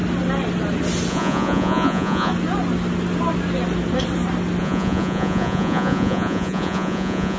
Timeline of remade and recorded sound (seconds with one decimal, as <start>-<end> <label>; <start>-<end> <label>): 0.0-1.1 recorded; 1.1-2.3 remade; 2.3-4.6 recorded; 4.6-7.4 remade